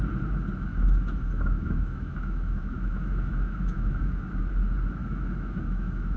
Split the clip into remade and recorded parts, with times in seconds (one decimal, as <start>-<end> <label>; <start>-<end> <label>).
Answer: 0.0-0.7 recorded; 0.7-4.4 remade; 4.4-5.0 recorded; 5.0-6.2 remade